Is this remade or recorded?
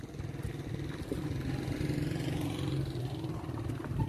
recorded